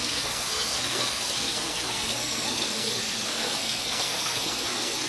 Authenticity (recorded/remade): remade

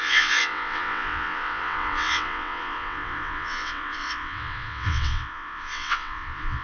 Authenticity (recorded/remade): remade